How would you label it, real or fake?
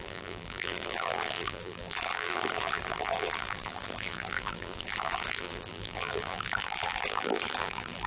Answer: fake